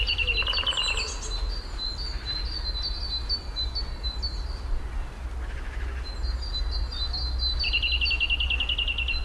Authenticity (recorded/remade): recorded